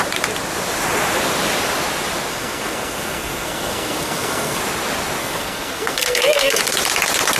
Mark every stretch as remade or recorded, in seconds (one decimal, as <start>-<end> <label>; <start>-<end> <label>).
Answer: 0.0-2.3 recorded; 2.3-4.6 remade; 4.6-5.2 recorded; 5.2-6.6 remade; 6.6-7.4 recorded